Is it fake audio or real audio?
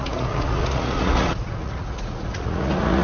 fake